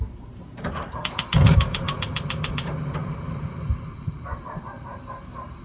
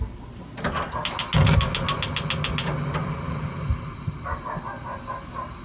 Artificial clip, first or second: first